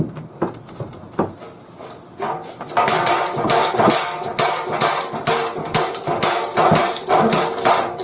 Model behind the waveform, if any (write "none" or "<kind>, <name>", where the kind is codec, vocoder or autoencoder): none